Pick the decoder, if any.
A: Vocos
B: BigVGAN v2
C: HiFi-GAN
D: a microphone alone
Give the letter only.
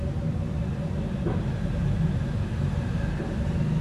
D